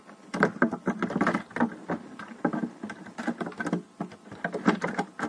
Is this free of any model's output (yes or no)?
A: yes